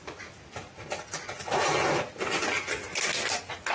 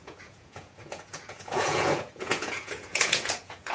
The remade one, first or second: second